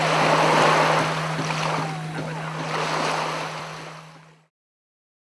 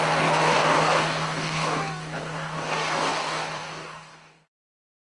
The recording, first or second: first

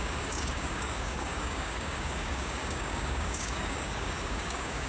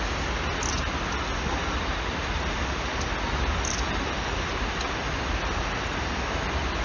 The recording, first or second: second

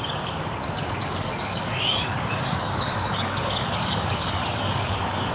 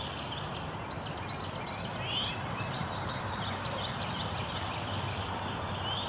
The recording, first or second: second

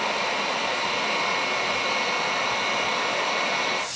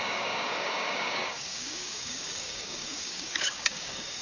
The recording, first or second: first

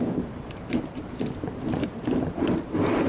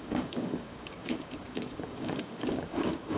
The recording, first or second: first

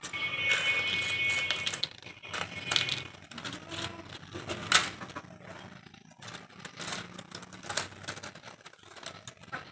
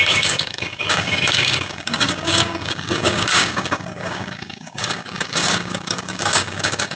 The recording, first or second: first